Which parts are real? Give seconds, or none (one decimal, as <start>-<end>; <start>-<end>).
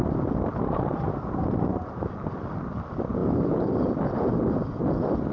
none